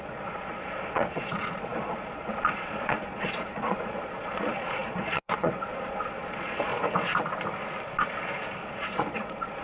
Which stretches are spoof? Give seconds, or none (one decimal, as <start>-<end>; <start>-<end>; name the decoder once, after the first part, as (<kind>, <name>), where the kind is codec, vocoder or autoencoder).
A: 0.0-6.7 (vocoder, Vocos); 8.7-9.6